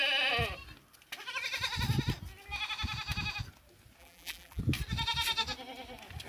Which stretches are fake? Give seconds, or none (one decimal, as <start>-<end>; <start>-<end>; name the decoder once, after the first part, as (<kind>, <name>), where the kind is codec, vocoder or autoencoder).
4.0-4.6 (vocoder, BigVGAN v2)